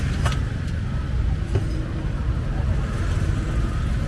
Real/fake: real